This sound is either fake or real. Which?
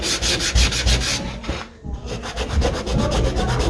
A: real